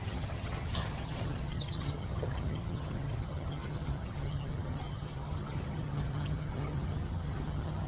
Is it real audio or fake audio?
fake